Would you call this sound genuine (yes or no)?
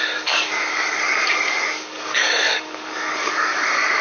no